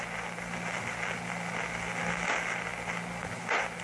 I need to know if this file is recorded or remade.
recorded